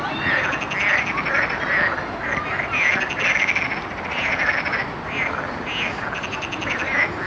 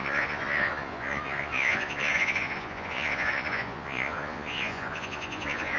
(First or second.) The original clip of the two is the first